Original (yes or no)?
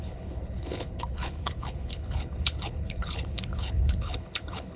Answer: no